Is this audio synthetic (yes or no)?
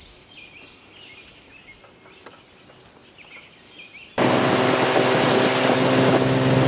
no